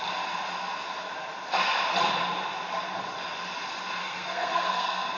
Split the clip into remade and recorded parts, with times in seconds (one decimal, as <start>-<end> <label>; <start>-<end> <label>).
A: 0.0-4.0 recorded; 4.0-5.2 remade